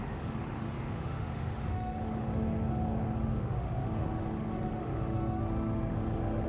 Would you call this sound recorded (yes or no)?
no